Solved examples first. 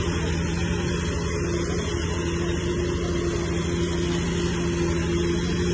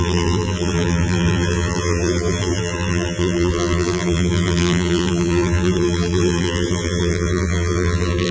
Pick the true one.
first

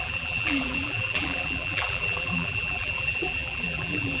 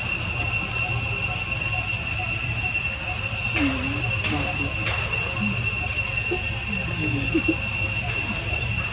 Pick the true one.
second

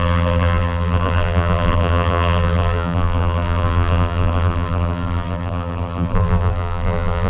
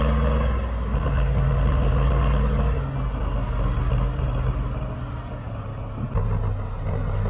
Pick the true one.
second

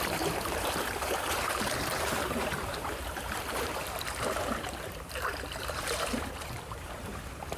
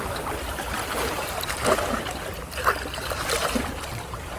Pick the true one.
second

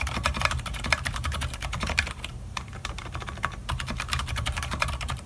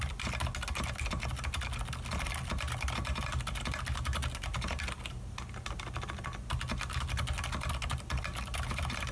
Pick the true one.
second